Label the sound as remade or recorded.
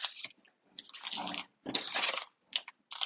recorded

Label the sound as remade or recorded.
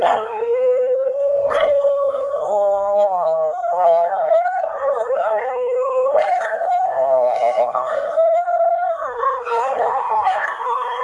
remade